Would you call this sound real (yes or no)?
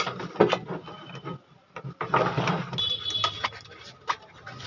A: yes